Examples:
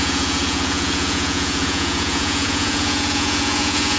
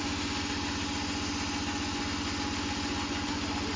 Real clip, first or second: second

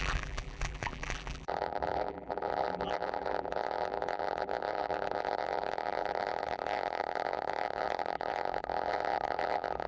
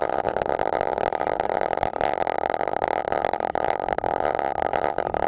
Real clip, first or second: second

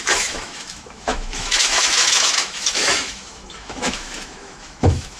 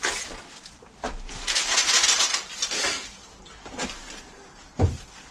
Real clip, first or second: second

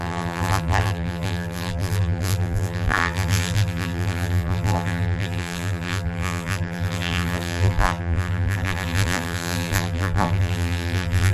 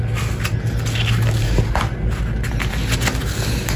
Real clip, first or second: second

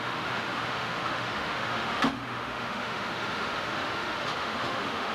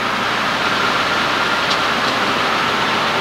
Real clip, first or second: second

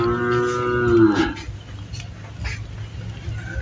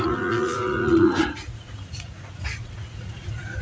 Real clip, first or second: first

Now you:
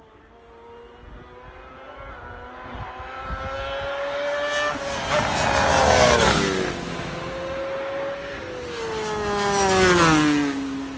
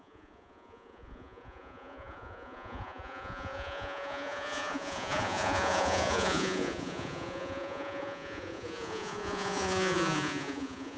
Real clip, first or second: first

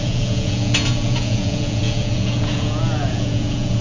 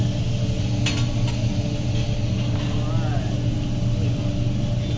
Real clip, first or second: second